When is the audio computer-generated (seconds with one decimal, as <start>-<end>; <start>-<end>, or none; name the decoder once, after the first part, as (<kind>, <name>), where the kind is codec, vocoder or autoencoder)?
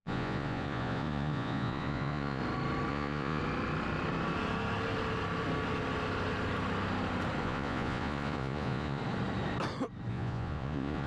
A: 0.0-2.4 (vocoder, Vocos); 2.9-3.4; 7.4-9.0; 10.1-11.1